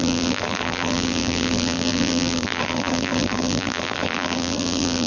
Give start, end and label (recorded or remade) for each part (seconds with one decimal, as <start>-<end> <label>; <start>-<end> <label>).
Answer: 0.0-5.1 remade